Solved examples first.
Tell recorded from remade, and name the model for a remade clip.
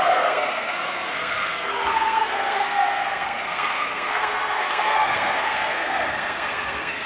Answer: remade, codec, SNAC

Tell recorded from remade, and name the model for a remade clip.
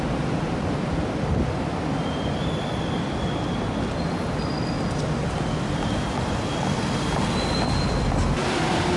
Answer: remade, vocoder, BigVGAN v2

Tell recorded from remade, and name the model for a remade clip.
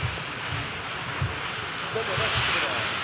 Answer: recorded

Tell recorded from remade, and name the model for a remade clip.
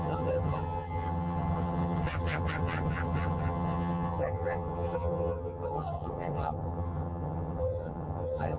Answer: remade, vocoder, HiFi-GAN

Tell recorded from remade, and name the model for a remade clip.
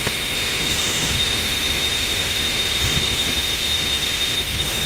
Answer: remade, autoencoder, DAC-VAE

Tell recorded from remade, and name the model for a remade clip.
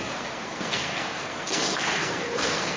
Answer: remade, codec, SNAC